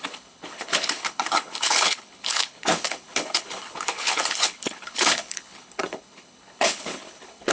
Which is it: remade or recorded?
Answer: remade